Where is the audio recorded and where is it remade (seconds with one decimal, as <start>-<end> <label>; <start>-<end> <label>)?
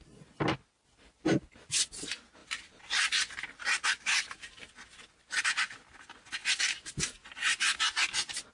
0.0-2.4 recorded; 2.4-5.3 remade; 5.3-8.5 recorded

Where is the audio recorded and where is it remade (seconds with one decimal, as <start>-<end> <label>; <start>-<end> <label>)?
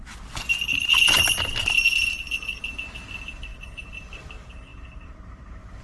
0.0-0.7 recorded; 0.7-1.3 remade; 1.3-3.5 recorded; 3.5-4.2 remade; 4.2-4.7 recorded; 4.7-5.8 remade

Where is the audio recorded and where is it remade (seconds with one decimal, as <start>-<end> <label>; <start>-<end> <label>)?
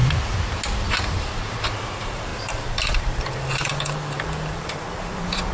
0.0-0.9 recorded; 0.9-5.5 remade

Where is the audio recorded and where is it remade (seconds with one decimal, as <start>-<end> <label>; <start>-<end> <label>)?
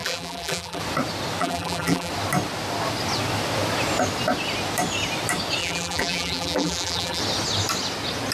0.0-0.8 remade; 0.8-1.4 recorded; 1.4-2.1 remade; 2.1-5.6 recorded; 5.6-7.2 remade; 7.2-8.3 recorded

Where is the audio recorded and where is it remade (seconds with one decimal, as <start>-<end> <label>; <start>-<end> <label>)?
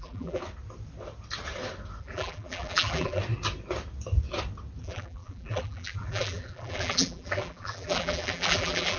0.0-0.4 remade; 0.4-2.0 recorded; 2.0-3.2 remade; 3.2-4.8 recorded; 4.8-9.0 remade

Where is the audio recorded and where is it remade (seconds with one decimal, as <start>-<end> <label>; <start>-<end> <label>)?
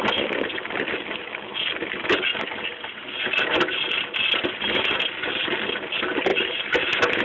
0.0-6.3 recorded; 6.3-7.2 remade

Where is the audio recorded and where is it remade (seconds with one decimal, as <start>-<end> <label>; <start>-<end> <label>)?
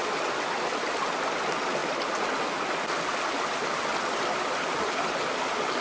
0.0-5.8 recorded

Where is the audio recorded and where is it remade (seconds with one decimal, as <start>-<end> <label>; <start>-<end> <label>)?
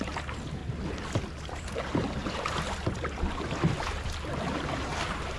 0.0-0.6 remade; 0.6-1.5 recorded; 1.5-5.4 remade